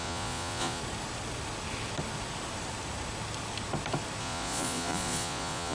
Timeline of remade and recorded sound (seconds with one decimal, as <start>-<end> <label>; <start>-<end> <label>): 0.0-0.8 remade; 0.8-4.2 recorded; 4.2-5.7 remade